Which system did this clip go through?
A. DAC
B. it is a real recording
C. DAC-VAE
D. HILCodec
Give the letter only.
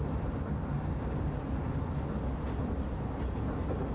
B